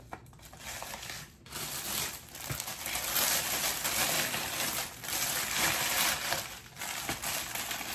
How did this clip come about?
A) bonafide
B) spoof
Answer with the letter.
A